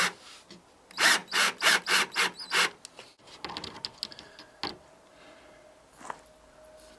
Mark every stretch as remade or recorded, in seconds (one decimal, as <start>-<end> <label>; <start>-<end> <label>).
0.0-7.0 recorded